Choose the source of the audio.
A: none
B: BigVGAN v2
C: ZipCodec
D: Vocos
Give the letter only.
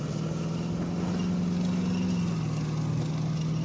A